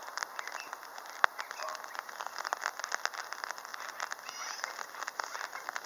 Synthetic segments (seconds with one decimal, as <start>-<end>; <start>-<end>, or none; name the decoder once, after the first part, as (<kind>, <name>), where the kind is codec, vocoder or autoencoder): none